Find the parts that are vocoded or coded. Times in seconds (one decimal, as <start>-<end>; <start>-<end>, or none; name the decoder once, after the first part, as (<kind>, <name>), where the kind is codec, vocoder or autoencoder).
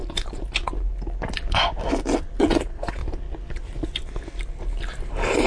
2.4-3.0 (vocoder, WaveNeXt)